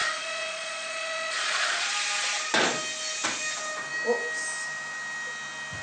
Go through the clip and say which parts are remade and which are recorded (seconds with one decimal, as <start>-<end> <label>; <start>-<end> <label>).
0.0-1.9 remade; 1.9-5.8 recorded

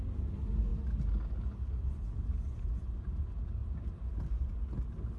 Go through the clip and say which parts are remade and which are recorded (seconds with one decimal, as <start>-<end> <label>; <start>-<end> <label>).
0.0-5.2 recorded

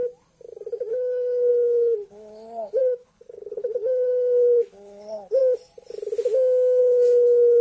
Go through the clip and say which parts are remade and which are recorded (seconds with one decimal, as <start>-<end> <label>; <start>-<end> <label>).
0.0-0.9 recorded; 0.9-5.4 remade; 5.4-6.8 recorded; 6.8-7.6 remade

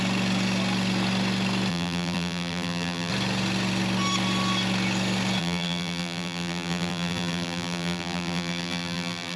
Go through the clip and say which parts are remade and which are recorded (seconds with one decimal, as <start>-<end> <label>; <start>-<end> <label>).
0.0-1.7 recorded; 1.7-3.1 remade; 3.1-5.4 recorded; 5.4-9.4 remade

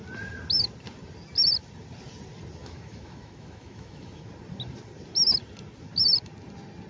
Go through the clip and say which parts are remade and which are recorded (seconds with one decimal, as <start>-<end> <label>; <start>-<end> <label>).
0.0-2.6 recorded; 2.6-4.3 remade; 4.3-6.9 recorded

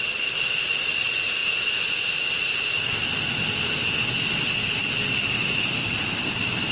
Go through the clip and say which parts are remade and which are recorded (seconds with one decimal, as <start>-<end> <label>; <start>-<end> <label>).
0.0-5.8 recorded; 5.8-6.7 remade